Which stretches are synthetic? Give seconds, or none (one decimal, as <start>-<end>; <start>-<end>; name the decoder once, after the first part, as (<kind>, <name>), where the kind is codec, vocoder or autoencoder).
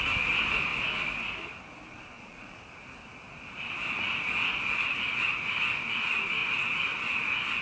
1.9-2.6 (vocoder, Vocos)